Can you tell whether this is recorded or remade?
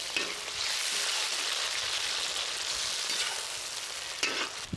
recorded